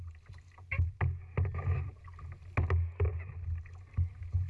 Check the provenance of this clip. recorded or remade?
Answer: recorded